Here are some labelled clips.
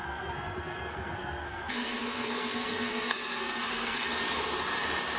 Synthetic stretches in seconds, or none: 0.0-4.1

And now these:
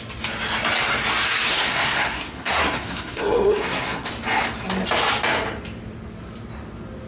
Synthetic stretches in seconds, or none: 1.5-4.1